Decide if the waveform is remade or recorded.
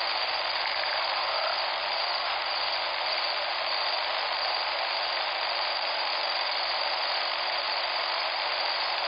remade